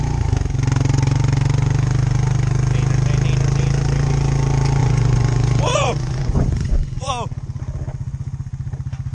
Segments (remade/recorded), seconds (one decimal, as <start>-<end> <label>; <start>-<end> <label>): 0.0-4.8 recorded; 4.8-7.1 remade; 7.1-9.1 recorded